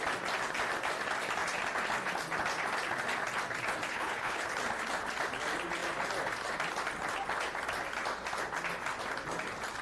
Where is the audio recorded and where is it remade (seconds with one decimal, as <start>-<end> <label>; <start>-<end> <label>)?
0.0-3.9 recorded; 3.9-4.5 remade; 4.5-9.8 recorded